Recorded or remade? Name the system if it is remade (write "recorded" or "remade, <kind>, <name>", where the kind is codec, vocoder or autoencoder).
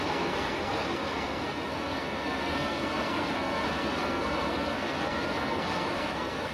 remade, codec, SNAC